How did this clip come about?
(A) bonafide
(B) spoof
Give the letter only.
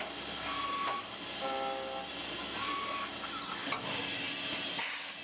A